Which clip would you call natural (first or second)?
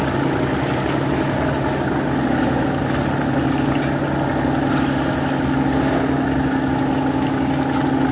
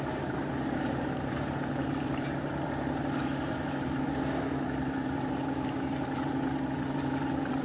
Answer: first